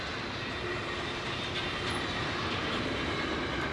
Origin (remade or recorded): recorded